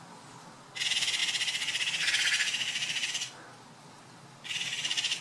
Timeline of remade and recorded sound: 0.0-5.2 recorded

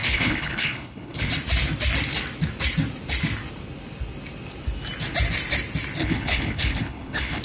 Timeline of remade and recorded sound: 0.0-1.3 remade; 1.3-6.0 recorded; 6.0-7.4 remade

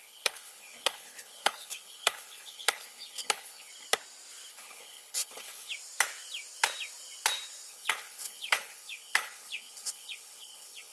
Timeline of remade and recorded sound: 0.0-3.7 remade; 3.7-4.5 recorded; 4.5-5.7 remade; 5.7-7.7 recorded; 7.7-10.9 remade

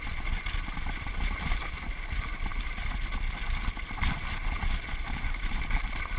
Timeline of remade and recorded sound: 0.0-6.2 recorded

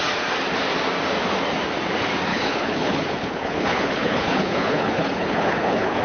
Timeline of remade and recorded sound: 0.0-2.3 recorded; 2.3-6.0 remade

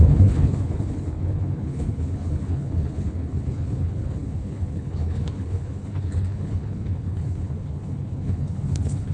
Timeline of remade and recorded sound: 0.0-9.1 remade

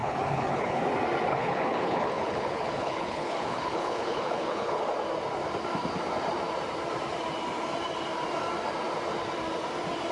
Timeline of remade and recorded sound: 0.0-0.8 remade; 0.8-1.3 recorded; 1.3-4.8 remade; 4.8-10.1 recorded

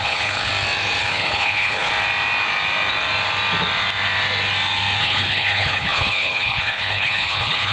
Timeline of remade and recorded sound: 0.0-0.5 remade; 0.5-1.0 recorded; 1.0-1.9 remade; 1.9-5.0 recorded; 5.0-7.7 remade